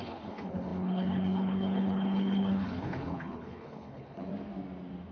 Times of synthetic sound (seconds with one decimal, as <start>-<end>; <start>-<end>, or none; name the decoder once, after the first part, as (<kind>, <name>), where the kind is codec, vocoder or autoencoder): 0.0-4.3 (codec, HILCodec)